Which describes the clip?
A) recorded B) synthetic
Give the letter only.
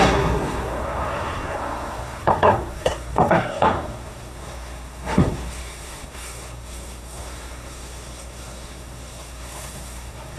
B